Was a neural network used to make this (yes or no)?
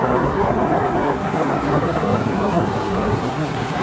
yes